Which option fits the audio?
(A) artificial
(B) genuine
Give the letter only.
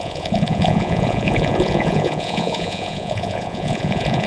A